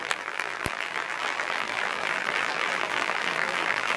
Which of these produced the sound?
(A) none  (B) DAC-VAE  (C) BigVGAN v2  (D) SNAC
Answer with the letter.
C